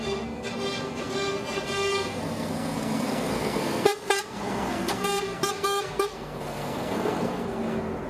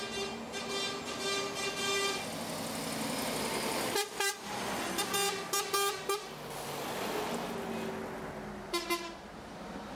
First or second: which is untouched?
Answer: second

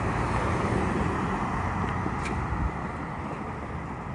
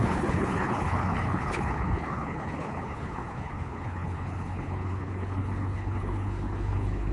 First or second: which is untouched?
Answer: first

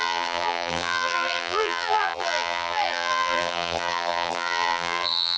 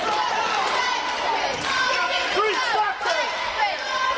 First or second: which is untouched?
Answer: second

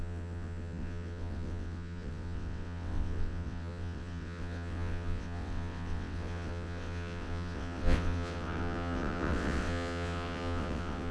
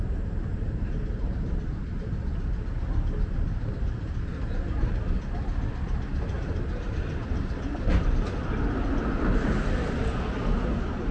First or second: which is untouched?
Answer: second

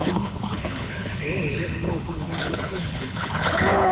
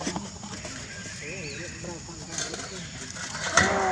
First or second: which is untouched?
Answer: second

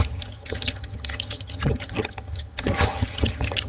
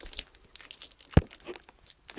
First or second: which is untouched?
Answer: second